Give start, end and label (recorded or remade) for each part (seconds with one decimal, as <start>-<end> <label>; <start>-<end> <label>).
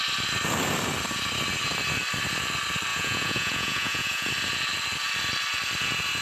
0.0-2.9 recorded; 2.9-4.3 remade; 4.3-6.2 recorded